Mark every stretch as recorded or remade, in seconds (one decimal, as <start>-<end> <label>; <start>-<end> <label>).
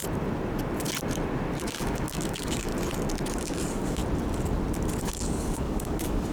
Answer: 0.0-1.6 recorded; 1.6-2.7 remade; 2.7-3.4 recorded; 3.4-4.0 remade; 4.0-5.0 recorded; 5.0-6.3 remade